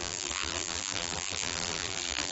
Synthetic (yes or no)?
yes